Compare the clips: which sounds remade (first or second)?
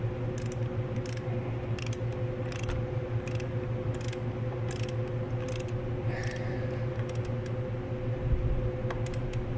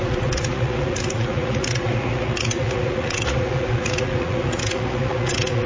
second